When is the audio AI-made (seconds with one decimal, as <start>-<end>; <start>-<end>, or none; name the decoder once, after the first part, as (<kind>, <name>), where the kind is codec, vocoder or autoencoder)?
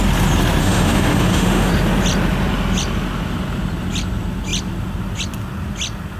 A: 0.6-1.7 (autoencoder, DAC-VAE)